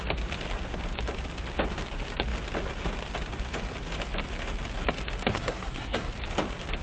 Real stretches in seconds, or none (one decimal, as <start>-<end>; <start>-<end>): 0.0-5.3; 6.1-6.8